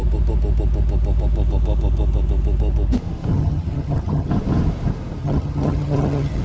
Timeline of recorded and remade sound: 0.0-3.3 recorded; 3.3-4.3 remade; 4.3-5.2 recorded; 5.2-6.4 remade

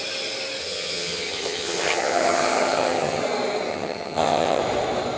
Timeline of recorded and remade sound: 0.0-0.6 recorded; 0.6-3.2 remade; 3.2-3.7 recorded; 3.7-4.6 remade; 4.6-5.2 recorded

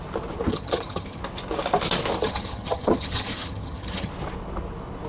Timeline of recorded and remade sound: 0.0-0.5 recorded; 0.5-1.2 remade; 1.2-2.2 recorded; 2.2-4.1 remade; 4.1-5.1 recorded

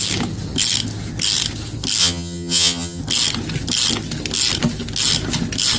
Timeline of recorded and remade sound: 0.0-2.0 recorded; 2.0-3.0 remade; 3.0-5.8 recorded

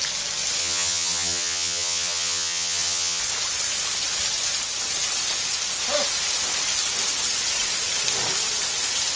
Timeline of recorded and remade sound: 0.0-0.6 recorded; 0.6-3.2 remade; 3.2-9.2 recorded

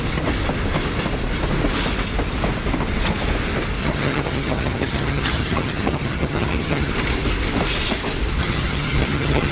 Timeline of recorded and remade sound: 0.0-3.8 recorded; 3.8-6.9 remade; 6.9-8.4 recorded; 8.4-9.5 remade